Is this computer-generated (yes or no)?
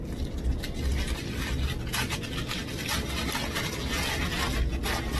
no